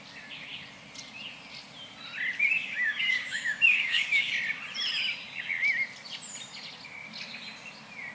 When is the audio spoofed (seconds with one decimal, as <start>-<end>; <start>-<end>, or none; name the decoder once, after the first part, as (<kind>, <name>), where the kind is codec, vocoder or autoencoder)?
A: 2.5-4.3 (codec, DAC)